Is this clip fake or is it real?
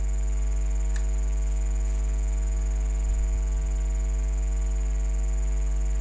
real